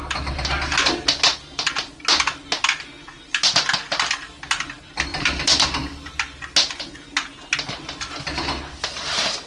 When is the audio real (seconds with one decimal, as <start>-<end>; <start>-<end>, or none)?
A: 0.0-5.1; 6.1-9.5